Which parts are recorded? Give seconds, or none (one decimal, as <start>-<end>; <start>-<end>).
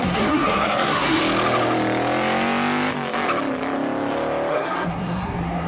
1.2-4.5